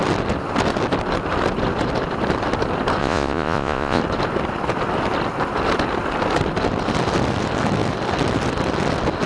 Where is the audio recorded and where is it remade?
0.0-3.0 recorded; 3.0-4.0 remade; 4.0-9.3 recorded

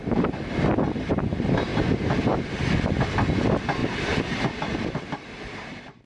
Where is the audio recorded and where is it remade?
0.0-1.1 remade; 1.1-3.8 recorded; 3.8-4.4 remade; 4.4-6.1 recorded

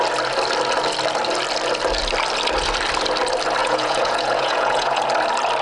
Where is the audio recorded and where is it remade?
0.0-3.6 recorded; 3.6-5.0 remade; 5.0-5.6 recorded